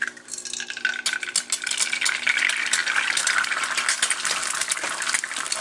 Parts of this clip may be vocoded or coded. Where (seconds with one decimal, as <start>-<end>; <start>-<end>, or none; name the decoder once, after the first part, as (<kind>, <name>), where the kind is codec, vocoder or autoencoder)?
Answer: none